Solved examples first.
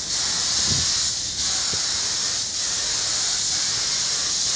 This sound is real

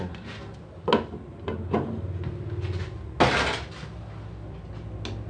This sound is real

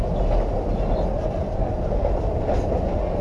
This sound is real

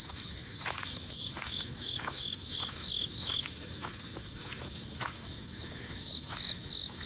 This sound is fake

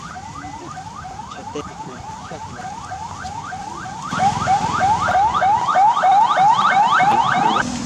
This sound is real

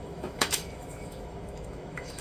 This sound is fake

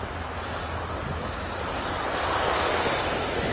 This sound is real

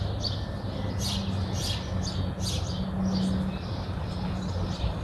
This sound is real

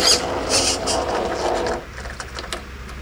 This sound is real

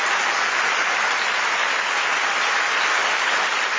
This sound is real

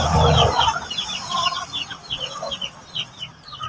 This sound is real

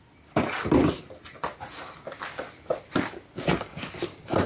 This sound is real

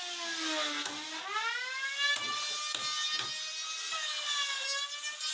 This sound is real